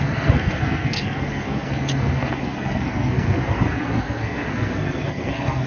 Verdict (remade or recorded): remade